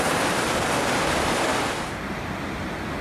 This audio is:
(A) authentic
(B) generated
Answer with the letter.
A